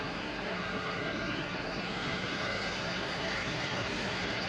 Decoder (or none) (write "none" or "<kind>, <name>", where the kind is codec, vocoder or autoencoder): codec, SNAC